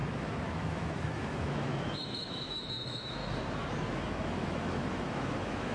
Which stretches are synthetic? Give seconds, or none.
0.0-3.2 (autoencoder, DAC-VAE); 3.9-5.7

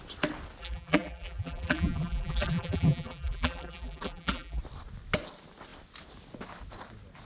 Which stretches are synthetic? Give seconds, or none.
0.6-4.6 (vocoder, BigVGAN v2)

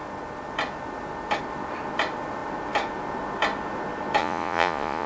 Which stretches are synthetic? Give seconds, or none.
4.2-5.1 (vocoder, Vocos)

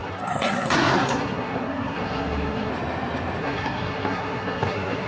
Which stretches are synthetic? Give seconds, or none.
0.0-2.7 (codec, SNAC); 3.4-5.1

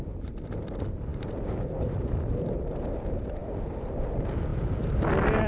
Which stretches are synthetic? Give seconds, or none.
none

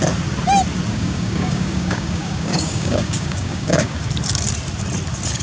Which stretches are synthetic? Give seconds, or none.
0.9-4.1 (codec, DAC)